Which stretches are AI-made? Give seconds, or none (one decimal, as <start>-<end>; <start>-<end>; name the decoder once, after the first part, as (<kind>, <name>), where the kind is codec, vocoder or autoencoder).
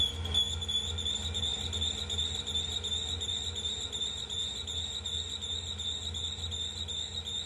none